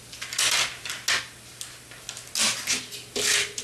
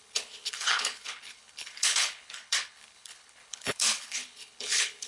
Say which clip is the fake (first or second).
second